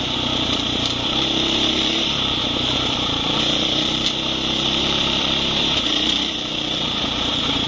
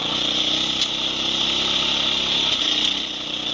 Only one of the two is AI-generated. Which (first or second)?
first